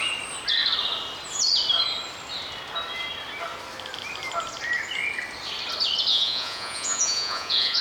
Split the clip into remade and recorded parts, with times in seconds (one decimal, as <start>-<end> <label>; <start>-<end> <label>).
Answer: 0.0-6.1 recorded; 6.1-7.8 remade